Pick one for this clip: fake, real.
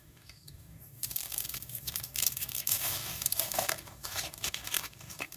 fake